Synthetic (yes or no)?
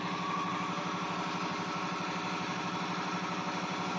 no